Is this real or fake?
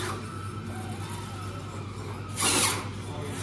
real